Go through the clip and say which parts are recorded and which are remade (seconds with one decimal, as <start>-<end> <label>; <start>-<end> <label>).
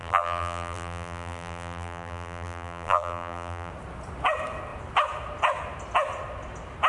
0.0-3.7 remade; 3.7-6.9 recorded